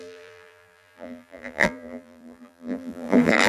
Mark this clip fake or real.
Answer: fake